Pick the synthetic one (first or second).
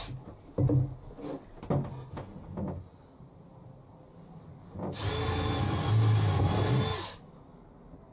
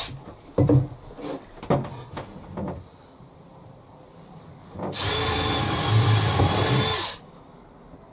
second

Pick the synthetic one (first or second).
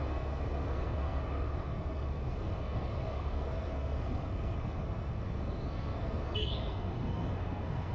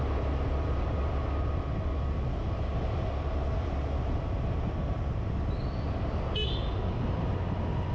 first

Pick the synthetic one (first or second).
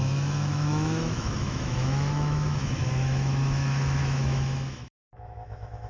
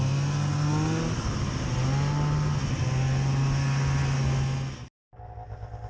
first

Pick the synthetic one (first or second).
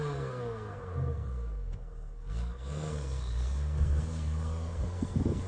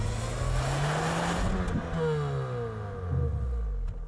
first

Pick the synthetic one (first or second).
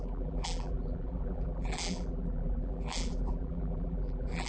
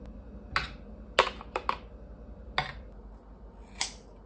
first